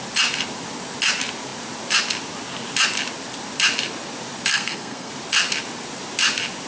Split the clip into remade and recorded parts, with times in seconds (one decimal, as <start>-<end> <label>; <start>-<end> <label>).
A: 0.0-4.5 recorded; 4.5-5.1 remade; 5.1-6.7 recorded